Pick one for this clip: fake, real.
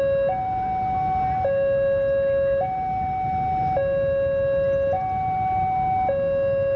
real